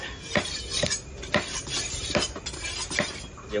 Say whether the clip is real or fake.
real